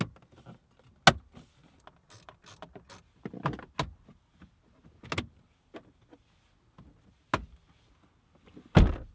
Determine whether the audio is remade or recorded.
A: recorded